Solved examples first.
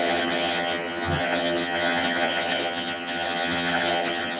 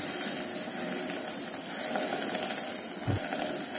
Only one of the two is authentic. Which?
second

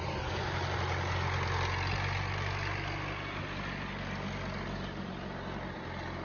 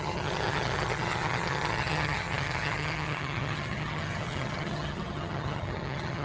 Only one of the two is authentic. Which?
first